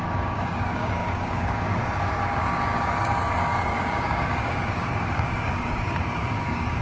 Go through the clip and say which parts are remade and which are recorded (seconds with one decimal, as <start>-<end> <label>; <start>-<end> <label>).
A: 0.0-6.8 remade

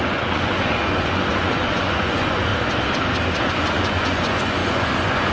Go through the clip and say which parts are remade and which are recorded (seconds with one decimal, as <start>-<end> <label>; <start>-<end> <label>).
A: 0.0-2.5 remade; 2.5-3.5 recorded; 3.5-5.3 remade

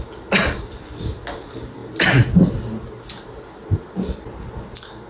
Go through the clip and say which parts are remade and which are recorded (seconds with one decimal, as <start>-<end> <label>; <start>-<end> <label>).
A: 0.0-5.1 recorded

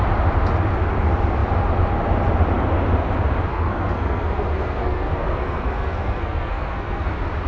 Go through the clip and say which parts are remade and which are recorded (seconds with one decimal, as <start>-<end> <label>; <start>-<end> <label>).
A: 0.0-3.5 recorded; 3.5-7.1 remade; 7.1-7.5 recorded

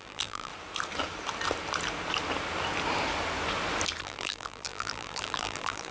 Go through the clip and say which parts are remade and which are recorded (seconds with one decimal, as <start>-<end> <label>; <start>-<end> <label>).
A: 0.0-0.5 remade; 0.5-4.0 recorded; 4.0-5.9 remade

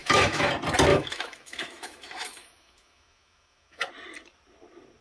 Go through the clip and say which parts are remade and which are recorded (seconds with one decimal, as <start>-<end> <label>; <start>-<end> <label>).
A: 0.0-0.5 remade; 0.5-0.9 recorded; 0.9-3.9 remade; 3.9-5.0 recorded

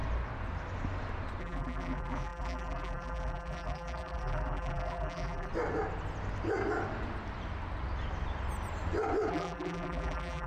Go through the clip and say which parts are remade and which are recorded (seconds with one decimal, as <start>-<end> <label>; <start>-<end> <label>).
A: 0.0-1.4 recorded; 1.4-5.5 remade; 5.5-9.3 recorded; 9.3-10.5 remade

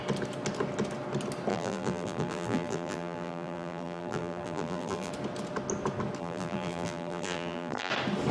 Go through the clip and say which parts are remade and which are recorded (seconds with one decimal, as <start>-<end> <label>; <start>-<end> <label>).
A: 0.0-1.5 recorded; 1.5-5.1 remade; 5.1-6.2 recorded; 6.2-7.9 remade; 7.9-8.3 recorded